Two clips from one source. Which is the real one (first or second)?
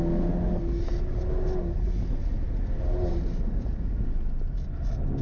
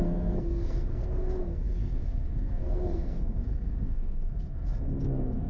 first